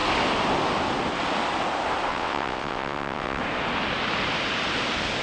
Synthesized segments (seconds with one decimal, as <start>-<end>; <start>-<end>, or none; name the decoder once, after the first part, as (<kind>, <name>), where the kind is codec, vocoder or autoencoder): 2.1-3.4 (vocoder, WaveNeXt)